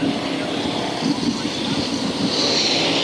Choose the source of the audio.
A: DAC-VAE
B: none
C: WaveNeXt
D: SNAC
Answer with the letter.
B